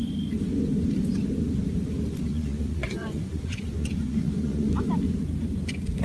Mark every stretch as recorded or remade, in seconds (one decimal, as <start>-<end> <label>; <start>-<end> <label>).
0.0-2.3 recorded; 2.3-4.7 remade; 4.7-6.0 recorded